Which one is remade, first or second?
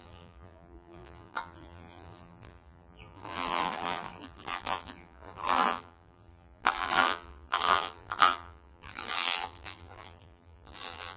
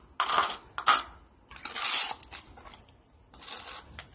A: first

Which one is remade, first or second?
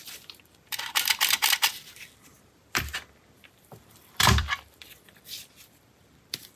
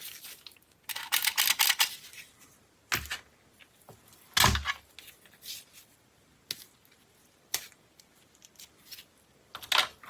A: first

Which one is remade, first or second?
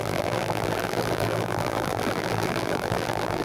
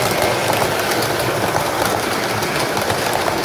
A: first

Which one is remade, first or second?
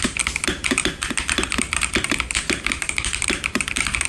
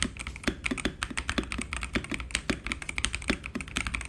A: first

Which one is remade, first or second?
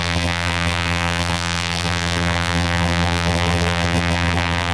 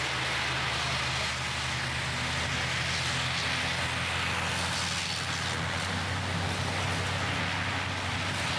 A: first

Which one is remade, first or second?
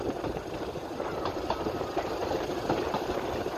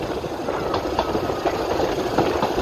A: first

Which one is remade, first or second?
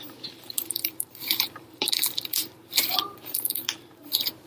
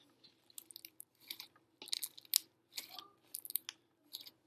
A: first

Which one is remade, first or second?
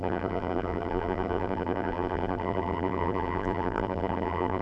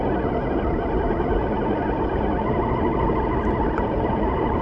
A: first